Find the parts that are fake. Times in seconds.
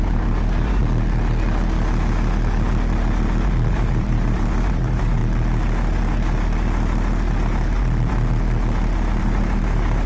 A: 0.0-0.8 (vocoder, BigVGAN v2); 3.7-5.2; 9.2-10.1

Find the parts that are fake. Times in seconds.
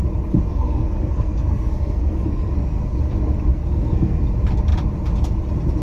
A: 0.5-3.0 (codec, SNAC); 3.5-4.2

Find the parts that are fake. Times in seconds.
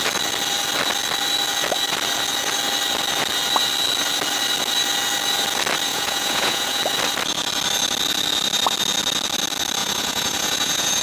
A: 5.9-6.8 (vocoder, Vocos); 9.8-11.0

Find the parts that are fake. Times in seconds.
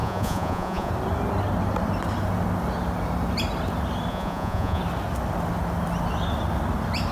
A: 0.0-0.9 (vocoder, Vocos); 4.1-4.8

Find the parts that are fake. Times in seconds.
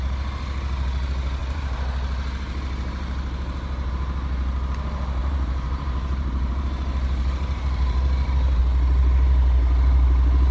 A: 1.4-3.9 (vocoder, BigVGAN v2); 5.2-8.6